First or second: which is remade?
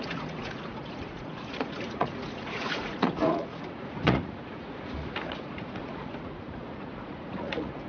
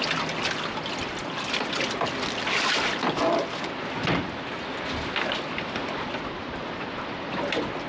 first